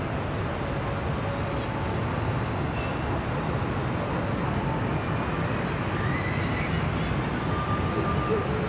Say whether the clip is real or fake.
real